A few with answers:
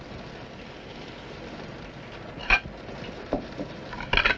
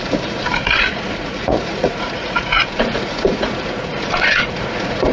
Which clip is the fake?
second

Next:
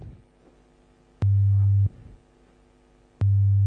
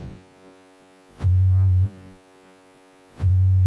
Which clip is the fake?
second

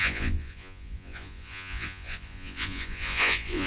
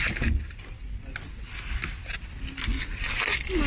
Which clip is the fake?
first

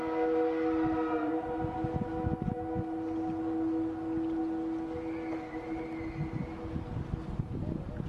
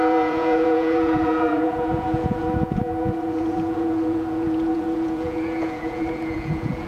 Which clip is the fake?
second